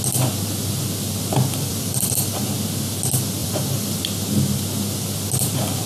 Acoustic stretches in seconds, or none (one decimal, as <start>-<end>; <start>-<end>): 0.0-1.7; 2.4-3.4; 4.0-5.9